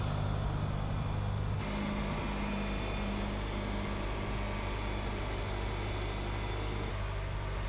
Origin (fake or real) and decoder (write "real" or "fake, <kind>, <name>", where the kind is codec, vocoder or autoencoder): real